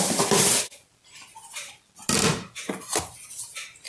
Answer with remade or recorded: recorded